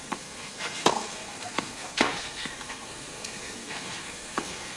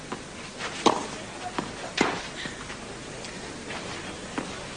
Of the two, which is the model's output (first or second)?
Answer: first